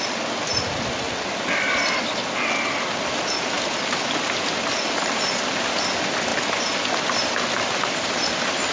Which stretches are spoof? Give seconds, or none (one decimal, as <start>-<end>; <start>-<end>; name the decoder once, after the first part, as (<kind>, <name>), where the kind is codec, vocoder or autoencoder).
none